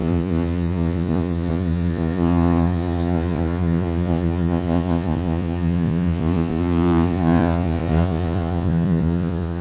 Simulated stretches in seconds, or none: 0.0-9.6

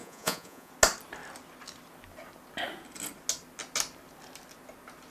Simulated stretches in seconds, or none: 0.0-0.7